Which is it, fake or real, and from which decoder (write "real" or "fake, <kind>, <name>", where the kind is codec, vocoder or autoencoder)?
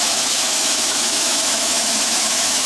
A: fake, autoencoder, DAC-VAE